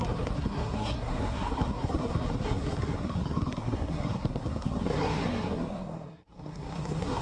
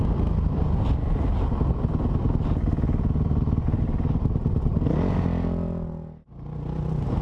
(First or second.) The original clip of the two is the second